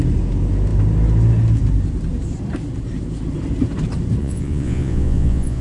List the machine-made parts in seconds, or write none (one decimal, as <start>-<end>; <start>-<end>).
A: 4.2-5.6